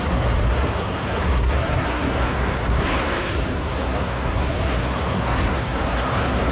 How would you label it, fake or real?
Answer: fake